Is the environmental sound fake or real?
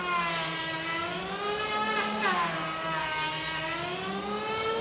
real